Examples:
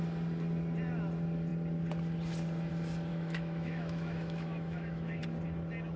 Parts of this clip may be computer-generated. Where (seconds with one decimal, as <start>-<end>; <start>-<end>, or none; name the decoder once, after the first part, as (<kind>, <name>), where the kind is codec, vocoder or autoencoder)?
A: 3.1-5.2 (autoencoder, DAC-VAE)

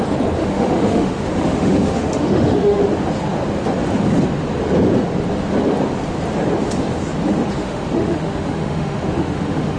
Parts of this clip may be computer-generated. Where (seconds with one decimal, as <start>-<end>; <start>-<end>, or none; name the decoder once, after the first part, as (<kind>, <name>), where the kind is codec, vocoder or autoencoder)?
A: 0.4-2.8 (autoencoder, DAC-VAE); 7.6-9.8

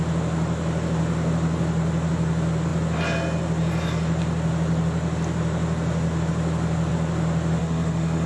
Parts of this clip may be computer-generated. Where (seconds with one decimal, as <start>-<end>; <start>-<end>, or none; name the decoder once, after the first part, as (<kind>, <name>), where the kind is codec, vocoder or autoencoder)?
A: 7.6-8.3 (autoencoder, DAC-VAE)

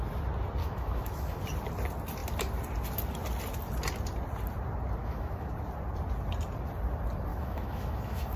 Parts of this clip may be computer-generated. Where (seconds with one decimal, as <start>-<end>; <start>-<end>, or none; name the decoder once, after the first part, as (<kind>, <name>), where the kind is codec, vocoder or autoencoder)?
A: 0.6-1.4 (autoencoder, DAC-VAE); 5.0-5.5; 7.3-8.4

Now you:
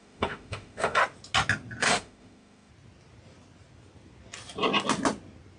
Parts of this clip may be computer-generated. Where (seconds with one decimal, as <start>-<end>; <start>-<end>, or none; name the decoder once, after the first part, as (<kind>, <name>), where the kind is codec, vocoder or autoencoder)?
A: 0.0-1.0 (autoencoder, DAC-VAE); 1.8-2.7